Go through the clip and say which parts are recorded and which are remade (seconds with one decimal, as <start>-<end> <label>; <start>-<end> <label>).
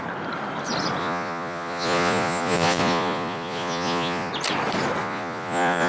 0.0-1.0 recorded; 1.0-4.3 remade; 4.3-5.0 recorded; 5.0-5.9 remade